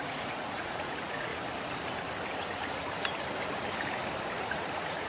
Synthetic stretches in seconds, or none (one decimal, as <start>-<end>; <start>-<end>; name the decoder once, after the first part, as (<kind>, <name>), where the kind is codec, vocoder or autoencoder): 0.0-1.3 (vocoder, Vocos); 4.4-5.1